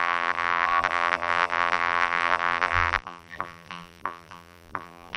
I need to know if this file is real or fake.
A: fake